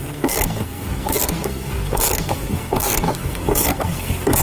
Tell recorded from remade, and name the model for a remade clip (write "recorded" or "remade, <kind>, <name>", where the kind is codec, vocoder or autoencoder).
remade, codec, SNAC